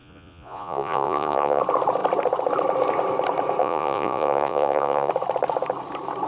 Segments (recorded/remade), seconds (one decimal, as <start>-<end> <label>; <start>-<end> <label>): 0.0-1.6 remade; 1.6-3.6 recorded; 3.6-5.1 remade; 5.1-6.3 recorded